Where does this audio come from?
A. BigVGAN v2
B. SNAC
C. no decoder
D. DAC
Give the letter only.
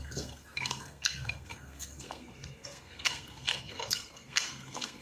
B